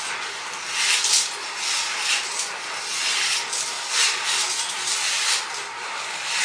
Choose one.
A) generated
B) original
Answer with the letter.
B